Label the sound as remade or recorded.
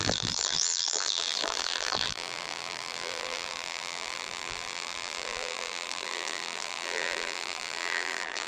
remade